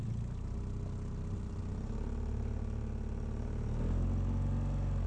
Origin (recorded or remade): recorded